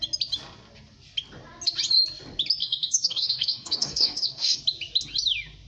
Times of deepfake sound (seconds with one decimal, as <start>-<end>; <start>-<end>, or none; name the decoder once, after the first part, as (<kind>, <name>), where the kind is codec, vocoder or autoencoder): 2.6-4.6 (codec, DAC)